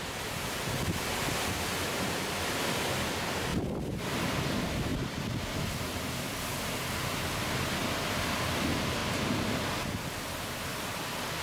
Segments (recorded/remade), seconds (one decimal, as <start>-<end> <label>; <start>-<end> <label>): 0.0-3.5 recorded; 3.5-4.4 remade; 4.4-11.4 recorded